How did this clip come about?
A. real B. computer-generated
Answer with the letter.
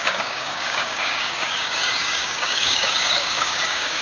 B